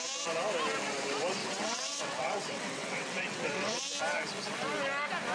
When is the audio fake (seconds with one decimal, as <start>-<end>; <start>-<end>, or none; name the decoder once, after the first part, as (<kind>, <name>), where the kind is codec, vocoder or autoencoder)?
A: 1.4-3.8 (vocoder, WaveNeXt)

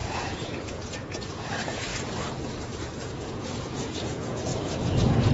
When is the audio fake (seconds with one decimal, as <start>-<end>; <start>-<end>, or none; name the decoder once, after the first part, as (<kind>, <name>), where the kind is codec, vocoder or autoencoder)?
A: 0.0-1.9 (vocoder, Vocos); 3.0-4.5

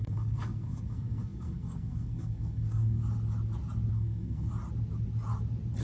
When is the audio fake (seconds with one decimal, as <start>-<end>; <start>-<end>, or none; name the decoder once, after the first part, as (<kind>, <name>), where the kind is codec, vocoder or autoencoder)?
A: 0.0-3.0 (codec, SNAC); 3.9-4.5

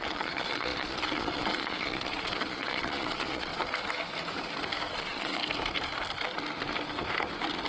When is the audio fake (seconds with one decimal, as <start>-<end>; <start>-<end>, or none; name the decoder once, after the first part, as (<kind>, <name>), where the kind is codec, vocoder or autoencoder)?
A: 0.0-3.5 (vocoder, Vocos); 4.9-5.4